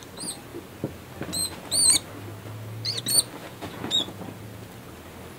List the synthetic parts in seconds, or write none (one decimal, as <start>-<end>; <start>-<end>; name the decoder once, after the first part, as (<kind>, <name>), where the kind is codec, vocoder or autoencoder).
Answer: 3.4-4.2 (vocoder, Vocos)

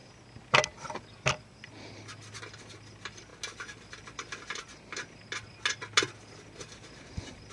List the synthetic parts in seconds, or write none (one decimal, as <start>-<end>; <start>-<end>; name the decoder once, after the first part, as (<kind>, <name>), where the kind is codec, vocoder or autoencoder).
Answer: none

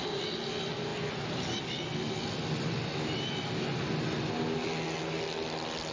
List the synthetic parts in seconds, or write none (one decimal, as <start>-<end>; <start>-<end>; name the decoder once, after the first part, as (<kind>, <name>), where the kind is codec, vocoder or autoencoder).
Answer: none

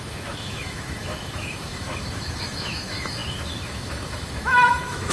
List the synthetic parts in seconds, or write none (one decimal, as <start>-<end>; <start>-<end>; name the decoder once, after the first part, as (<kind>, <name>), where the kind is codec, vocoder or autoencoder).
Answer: 0.0-5.1 (autoencoder, DAC-VAE)